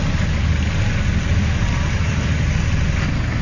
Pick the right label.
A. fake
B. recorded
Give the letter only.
B